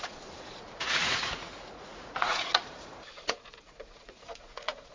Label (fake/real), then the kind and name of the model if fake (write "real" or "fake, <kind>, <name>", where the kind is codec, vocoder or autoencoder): fake, vocoder, Vocos